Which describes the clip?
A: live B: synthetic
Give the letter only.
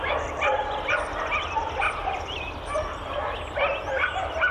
B